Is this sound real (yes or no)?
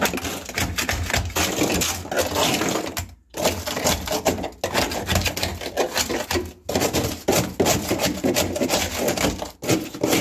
yes